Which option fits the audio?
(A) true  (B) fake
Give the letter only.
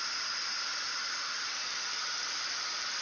B